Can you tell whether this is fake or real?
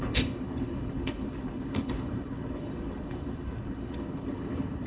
fake